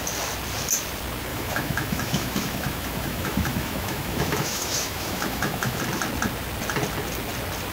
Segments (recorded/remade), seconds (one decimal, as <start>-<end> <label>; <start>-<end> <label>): 0.0-1.3 recorded; 1.3-5.8 remade; 5.8-7.7 recorded